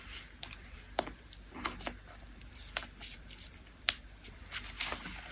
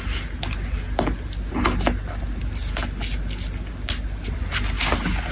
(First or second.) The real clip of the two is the second